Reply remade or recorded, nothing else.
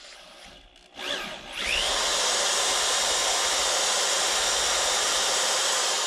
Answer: recorded